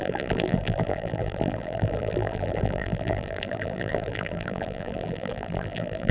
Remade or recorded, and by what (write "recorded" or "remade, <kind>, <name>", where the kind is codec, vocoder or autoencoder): remade, vocoder, BigVGAN v2